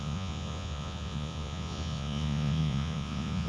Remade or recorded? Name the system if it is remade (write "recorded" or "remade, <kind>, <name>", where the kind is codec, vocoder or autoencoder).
remade, vocoder, Vocos